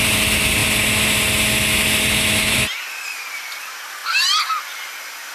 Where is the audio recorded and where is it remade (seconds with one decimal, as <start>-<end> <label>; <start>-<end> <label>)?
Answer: 0.0-5.3 recorded